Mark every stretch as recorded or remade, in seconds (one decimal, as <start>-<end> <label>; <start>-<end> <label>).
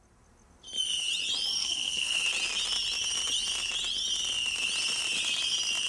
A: 0.0-1.6 recorded; 1.6-2.2 remade; 2.2-5.9 recorded